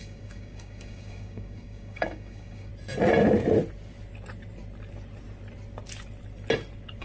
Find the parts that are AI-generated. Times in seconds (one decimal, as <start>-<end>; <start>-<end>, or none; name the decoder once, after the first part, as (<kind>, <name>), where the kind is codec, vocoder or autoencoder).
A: 0.0-2.7 (codec, DAC)